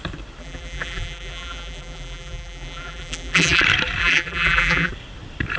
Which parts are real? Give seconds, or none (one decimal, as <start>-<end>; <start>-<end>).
0.0-0.4; 3.6-4.0; 4.9-5.6